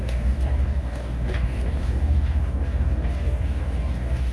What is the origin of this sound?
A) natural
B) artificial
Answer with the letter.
B